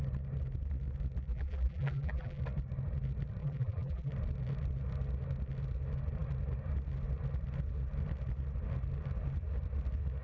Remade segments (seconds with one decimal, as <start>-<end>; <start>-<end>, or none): 1.3-2.4; 3.4-4.1